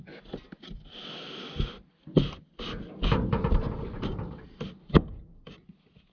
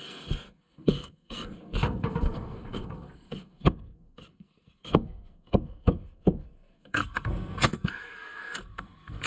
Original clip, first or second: first